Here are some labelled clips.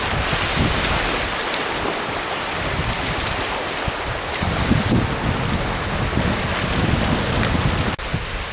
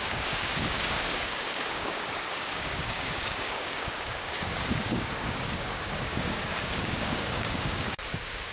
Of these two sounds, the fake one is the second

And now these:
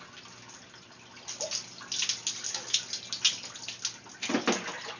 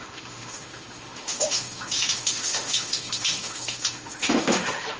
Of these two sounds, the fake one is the second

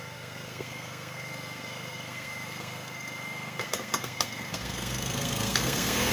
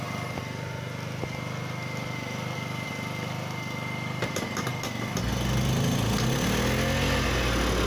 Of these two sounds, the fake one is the first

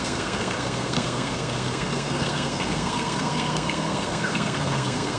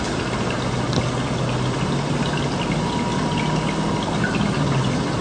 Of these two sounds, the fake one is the first